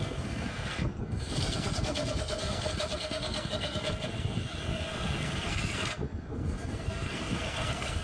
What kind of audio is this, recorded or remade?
remade